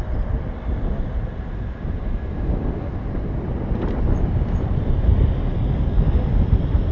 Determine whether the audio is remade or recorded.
recorded